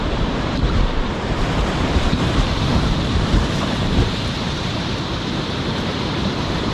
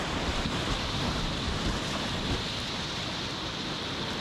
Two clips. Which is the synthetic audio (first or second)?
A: first